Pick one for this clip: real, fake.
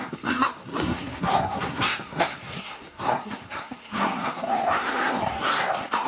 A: fake